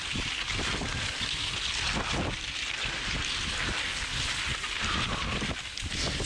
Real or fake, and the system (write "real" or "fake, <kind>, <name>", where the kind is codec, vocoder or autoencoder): real